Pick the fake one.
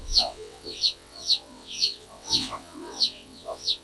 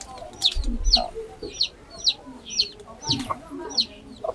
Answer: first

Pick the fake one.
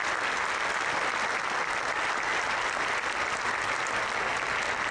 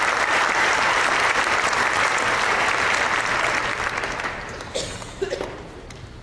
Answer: second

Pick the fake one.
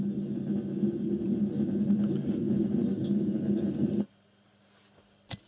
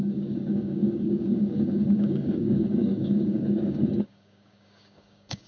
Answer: second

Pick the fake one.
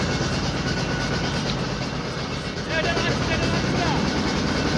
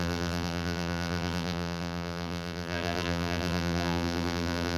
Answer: second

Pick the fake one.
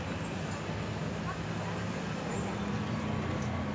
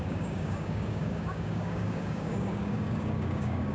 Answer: second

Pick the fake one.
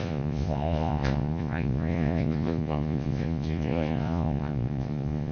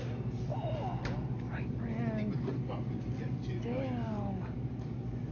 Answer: first